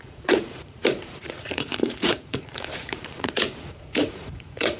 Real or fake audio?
fake